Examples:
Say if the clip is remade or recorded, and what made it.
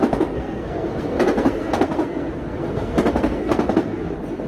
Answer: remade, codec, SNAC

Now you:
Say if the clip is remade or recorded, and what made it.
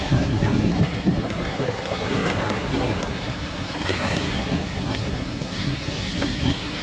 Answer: remade, codec, SNAC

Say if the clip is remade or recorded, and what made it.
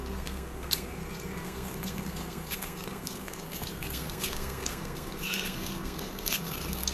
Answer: remade, codec, SNAC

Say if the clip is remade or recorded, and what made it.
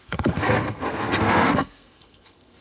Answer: remade, codec, SNAC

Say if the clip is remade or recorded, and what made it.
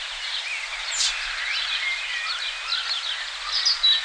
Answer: recorded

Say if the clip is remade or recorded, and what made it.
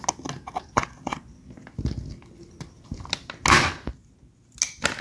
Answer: recorded